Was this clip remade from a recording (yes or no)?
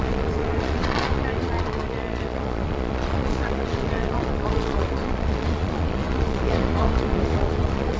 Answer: yes